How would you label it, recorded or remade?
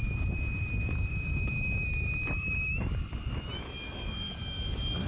remade